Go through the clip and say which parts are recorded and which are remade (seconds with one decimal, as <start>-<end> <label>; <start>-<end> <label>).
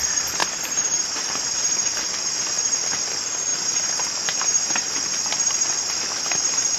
0.0-0.4 recorded; 0.4-1.0 remade; 1.0-3.5 recorded; 3.5-4.8 remade; 4.8-6.8 recorded